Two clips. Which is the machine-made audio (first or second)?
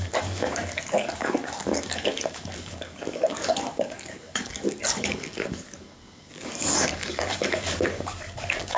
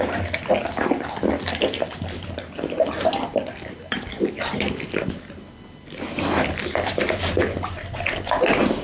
first